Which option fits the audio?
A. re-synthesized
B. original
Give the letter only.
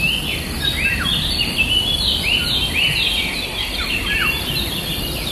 B